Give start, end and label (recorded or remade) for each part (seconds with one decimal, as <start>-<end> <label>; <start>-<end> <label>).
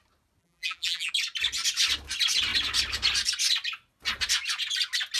0.0-0.4 recorded; 0.4-1.1 remade; 1.1-5.2 recorded